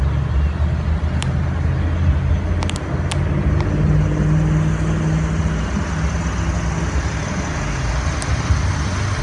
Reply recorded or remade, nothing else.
recorded